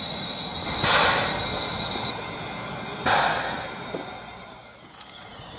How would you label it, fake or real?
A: real